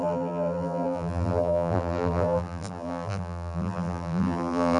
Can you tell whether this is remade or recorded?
remade